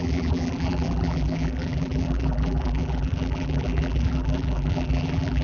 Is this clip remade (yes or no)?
yes